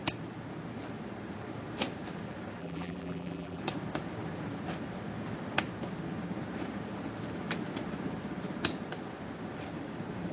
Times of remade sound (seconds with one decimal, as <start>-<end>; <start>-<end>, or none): 2.6-3.6